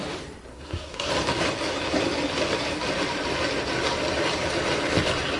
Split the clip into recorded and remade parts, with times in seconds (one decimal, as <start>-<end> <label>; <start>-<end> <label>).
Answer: 0.0-0.5 recorded; 0.5-1.1 remade; 1.1-5.4 recorded